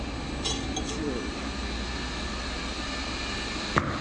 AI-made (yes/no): no